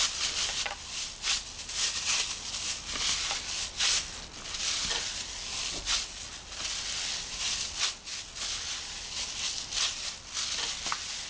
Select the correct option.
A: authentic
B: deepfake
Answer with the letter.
A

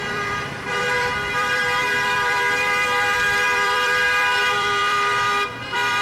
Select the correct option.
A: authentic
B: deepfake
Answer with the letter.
B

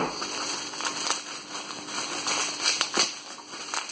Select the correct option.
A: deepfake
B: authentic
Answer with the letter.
B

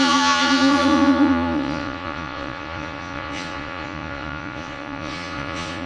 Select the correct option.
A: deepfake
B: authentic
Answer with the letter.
A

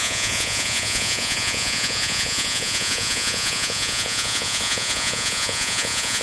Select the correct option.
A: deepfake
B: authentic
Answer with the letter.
A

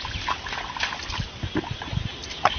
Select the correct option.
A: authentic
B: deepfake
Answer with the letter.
A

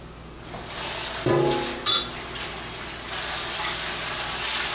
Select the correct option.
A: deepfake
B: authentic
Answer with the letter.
B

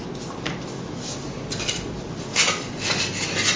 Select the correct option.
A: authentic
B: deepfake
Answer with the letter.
A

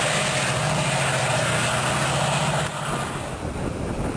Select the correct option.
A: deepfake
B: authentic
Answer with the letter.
B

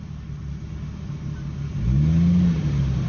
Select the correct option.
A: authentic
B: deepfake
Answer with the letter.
A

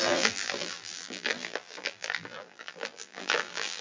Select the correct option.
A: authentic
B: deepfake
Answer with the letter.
B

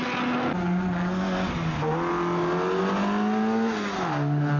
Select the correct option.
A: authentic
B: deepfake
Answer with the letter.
A